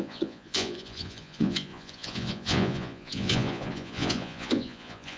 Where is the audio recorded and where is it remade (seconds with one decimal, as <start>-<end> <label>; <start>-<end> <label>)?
0.0-5.2 remade